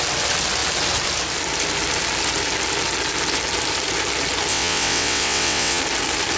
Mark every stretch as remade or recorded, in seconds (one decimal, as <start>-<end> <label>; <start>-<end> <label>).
0.0-4.5 recorded; 4.5-5.8 remade; 5.8-6.4 recorded